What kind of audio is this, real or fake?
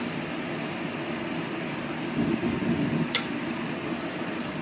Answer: fake